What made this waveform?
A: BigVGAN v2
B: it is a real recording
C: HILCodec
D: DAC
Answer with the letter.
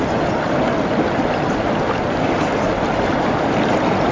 B